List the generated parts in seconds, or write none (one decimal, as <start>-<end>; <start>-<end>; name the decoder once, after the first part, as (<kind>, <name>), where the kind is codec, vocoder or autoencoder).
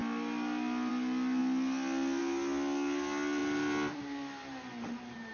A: none